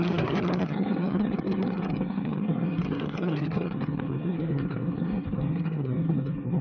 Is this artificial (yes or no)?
yes